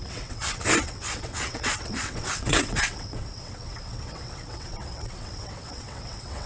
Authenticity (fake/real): fake